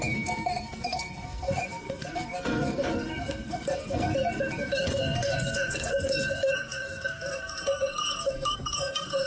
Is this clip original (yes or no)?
no